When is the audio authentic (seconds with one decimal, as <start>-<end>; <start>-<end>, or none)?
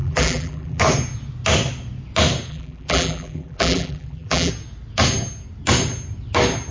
0.8-2.5; 4.5-6.7